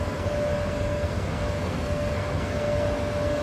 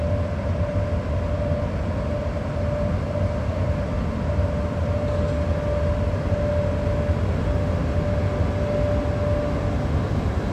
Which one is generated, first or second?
first